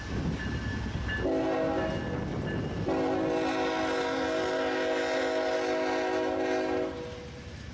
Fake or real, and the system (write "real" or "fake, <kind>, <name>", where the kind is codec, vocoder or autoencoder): real